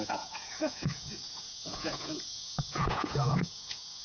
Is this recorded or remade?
remade